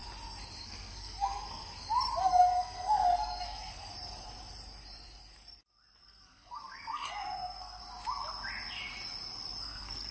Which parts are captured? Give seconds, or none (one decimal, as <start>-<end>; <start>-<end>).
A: 0.0-0.6; 1.7-2.2; 3.9-6.0; 7.8-9.6